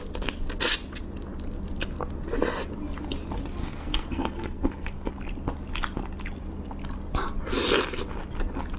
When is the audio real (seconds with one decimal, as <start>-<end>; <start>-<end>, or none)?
0.0-3.6; 5.1-8.8

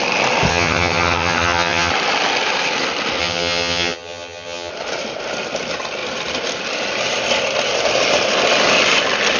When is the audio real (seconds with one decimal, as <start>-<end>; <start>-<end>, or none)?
0.0-0.5; 1.9-3.2; 4.7-9.4